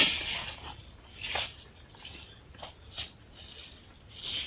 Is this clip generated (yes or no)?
no